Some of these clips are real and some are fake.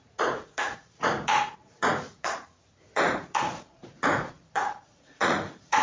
fake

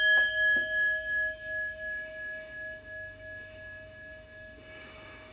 fake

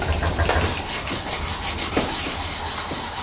real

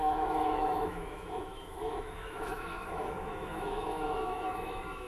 fake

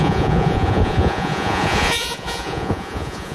fake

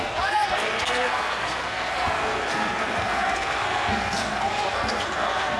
fake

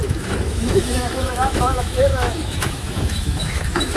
fake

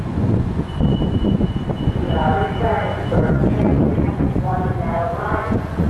fake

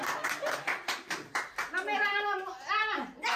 real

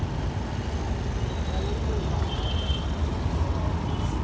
real